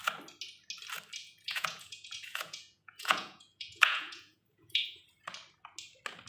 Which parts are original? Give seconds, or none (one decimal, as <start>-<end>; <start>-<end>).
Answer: 0.0-1.2; 5.0-6.3